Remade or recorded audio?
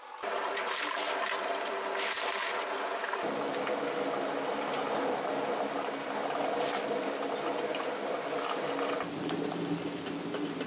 recorded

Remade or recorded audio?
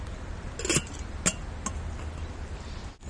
recorded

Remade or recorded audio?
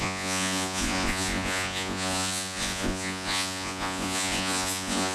remade